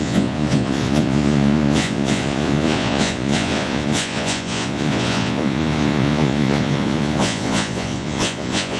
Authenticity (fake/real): fake